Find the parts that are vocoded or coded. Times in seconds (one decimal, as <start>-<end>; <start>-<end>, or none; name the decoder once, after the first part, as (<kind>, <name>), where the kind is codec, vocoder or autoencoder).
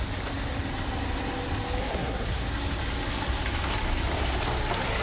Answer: 1.8-2.5 (codec, SNAC)